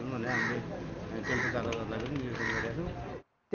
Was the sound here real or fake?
real